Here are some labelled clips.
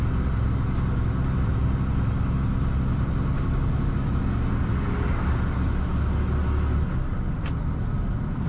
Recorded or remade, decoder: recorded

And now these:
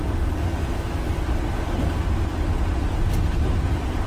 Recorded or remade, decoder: recorded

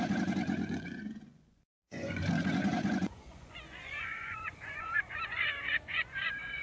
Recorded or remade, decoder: remade, vocoder, Vocos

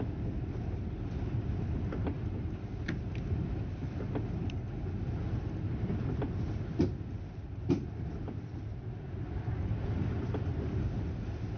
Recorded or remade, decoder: recorded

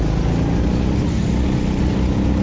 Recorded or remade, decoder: recorded